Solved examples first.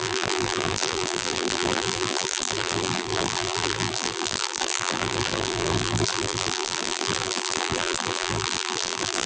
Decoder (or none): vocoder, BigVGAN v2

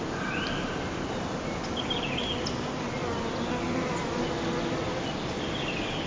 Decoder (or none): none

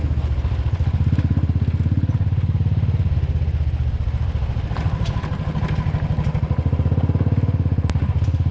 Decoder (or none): none